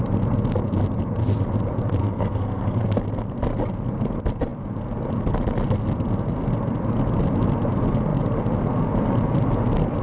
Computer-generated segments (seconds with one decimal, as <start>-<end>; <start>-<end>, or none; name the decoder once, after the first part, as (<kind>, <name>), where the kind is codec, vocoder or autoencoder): 2.0-3.0 (codec, SNAC)